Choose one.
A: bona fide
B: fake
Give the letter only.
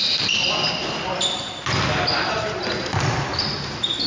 A